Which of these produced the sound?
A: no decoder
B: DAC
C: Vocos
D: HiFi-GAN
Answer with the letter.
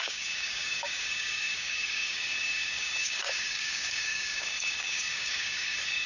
B